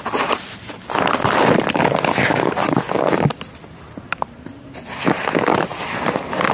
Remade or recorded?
recorded